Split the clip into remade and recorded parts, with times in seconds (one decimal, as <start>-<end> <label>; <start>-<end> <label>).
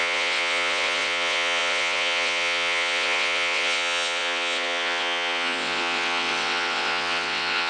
0.0-7.7 remade